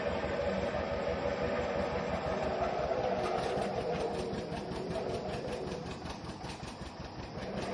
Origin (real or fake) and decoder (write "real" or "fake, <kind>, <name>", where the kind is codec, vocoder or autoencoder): real